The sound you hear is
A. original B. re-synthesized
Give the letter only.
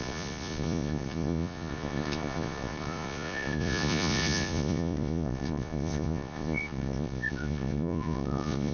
B